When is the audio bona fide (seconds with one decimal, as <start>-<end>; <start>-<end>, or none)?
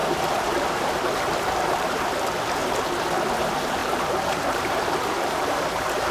0.9-2.6; 3.2-3.8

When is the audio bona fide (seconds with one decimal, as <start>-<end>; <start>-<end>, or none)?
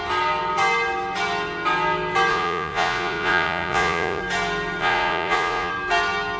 0.0-2.3; 4.2-4.8; 5.7-6.4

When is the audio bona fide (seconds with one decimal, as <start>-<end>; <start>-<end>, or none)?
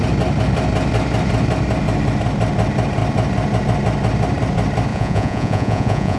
0.0-4.9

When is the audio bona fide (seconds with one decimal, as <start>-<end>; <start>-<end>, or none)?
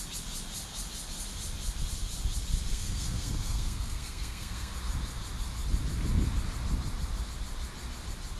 0.0-2.7; 4.7-8.4